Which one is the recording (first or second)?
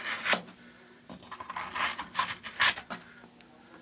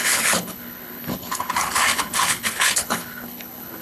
first